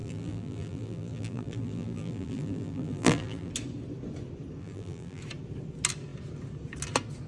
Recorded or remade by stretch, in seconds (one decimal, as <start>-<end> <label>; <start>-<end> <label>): 0.0-3.5 remade; 3.5-4.6 recorded; 4.6-5.2 remade; 5.2-7.3 recorded